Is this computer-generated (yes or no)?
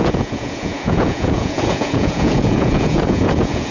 yes